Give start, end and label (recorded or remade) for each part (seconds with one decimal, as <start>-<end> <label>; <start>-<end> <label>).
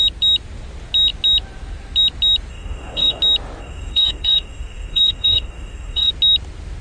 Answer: 0.0-2.5 recorded; 2.5-3.2 remade; 3.2-3.6 recorded; 3.6-6.1 remade; 6.1-6.8 recorded